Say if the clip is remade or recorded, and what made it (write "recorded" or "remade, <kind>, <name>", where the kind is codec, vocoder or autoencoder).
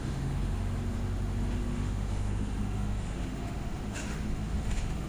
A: remade, autoencoder, DAC-VAE